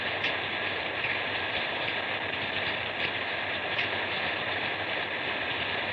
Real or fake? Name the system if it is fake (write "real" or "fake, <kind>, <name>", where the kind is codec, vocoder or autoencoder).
fake, vocoder, BigVGAN v2